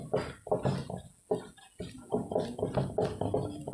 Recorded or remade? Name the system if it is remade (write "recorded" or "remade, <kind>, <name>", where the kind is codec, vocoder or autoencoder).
recorded